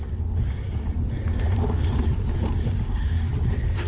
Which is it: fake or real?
real